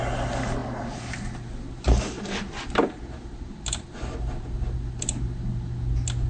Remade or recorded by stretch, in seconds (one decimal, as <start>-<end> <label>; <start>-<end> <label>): 0.0-6.3 recorded